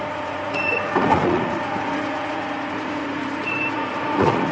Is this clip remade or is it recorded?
remade